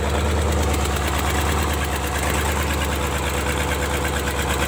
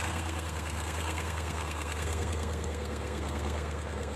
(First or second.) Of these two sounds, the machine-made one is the second